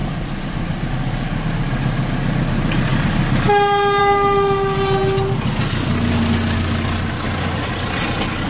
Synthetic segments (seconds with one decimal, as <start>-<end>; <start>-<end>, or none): 0.0-0.9